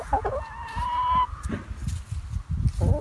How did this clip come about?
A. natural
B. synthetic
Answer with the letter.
A